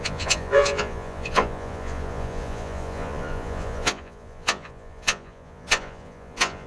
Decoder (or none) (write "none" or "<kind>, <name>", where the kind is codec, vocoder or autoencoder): vocoder, Vocos